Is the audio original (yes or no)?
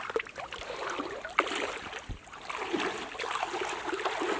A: yes